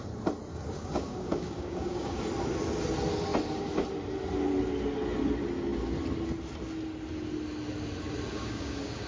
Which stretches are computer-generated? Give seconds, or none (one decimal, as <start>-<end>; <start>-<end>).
0.5-2.2; 8.3-9.1